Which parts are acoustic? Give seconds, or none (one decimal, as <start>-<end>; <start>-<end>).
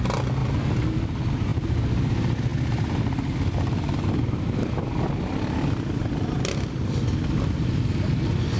0.0-8.6